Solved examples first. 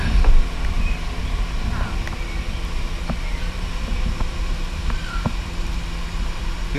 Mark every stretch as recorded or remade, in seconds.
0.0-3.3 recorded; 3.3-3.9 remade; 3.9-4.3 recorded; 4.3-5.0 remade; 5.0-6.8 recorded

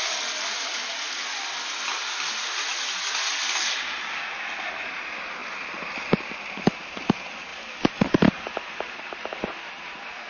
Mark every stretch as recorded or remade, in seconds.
0.0-2.7 remade; 2.7-7.5 recorded; 7.5-8.3 remade; 8.3-10.3 recorded

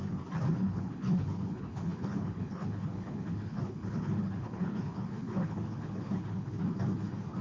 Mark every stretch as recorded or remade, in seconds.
0.0-0.5 recorded; 0.5-6.6 remade; 6.6-7.4 recorded

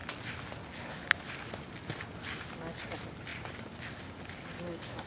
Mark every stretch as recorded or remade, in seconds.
0.0-5.1 recorded

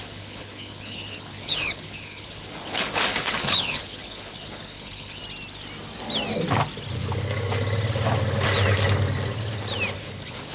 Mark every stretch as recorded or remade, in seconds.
0.0-5.2 remade; 5.2-10.0 recorded; 10.0-10.5 remade

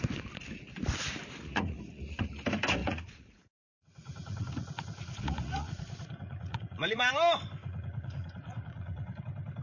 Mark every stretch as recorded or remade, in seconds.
0.0-1.4 recorded; 1.4-2.4 remade; 2.4-2.8 recorded; 2.8-7.1 remade; 7.1-7.6 recorded; 7.6-9.2 remade; 9.2-9.6 recorded

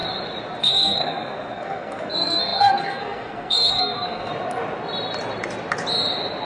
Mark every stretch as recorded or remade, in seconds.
0.0-0.6 recorded; 0.6-4.3 remade; 4.3-6.5 recorded

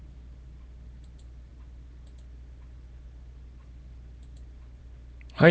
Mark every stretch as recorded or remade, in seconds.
0.0-5.5 recorded